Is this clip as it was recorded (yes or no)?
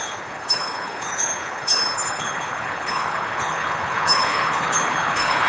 no